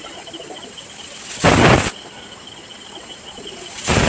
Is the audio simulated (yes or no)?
no